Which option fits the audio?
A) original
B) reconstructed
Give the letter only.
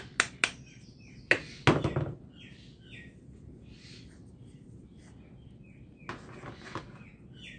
A